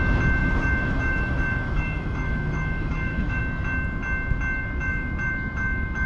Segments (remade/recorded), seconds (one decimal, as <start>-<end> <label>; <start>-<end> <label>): 0.0-0.4 recorded; 0.4-3.4 remade; 3.4-4.6 recorded; 4.6-6.1 remade